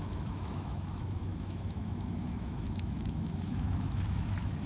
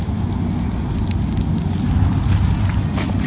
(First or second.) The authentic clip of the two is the second